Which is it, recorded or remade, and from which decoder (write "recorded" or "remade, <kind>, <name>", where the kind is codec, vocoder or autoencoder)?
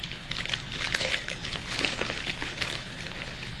remade, codec, HILCodec